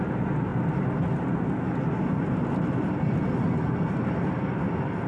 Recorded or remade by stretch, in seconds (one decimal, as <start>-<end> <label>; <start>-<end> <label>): 0.0-5.1 recorded